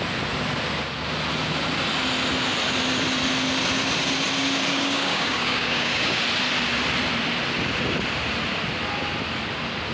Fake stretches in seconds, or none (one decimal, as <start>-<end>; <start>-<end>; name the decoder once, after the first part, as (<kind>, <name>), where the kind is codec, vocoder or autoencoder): 4.7-6.2 (codec, DAC)